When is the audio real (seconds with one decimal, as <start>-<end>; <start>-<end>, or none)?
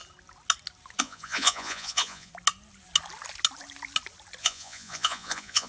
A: 0.0-1.0; 2.3-4.4